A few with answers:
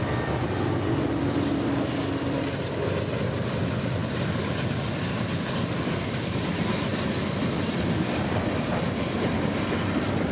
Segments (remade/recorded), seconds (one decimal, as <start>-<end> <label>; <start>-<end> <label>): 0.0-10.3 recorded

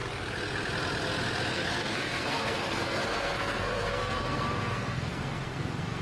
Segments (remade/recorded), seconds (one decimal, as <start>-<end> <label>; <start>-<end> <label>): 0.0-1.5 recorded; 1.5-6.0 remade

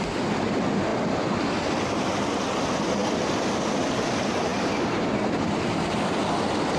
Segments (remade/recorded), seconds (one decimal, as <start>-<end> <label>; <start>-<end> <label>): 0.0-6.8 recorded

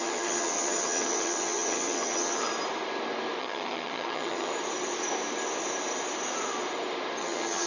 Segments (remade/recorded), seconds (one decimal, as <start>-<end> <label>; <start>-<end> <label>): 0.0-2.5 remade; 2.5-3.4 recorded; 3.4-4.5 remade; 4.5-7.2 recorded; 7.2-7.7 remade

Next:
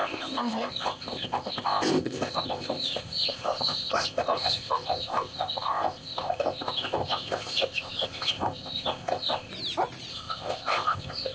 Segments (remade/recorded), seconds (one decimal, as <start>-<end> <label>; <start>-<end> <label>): 0.0-9.5 remade; 9.5-10.1 recorded; 10.1-11.3 remade

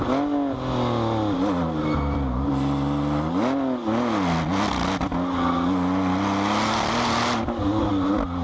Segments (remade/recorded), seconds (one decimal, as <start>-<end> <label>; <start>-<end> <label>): 0.0-8.4 recorded

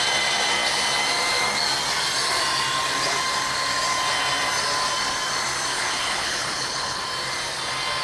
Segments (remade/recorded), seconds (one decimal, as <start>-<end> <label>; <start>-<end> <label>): 0.0-5.7 recorded; 5.7-7.0 remade; 7.0-8.0 recorded